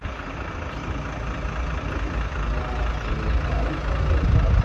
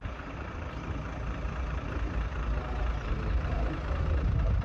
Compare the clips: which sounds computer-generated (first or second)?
second